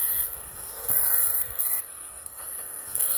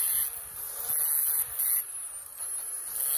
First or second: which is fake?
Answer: first